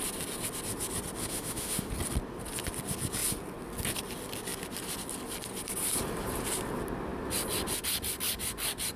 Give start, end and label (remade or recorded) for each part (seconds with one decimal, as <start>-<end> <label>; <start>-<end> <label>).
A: 0.0-1.2 recorded; 1.2-1.9 remade; 1.9-9.0 recorded